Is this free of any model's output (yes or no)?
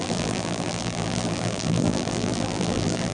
no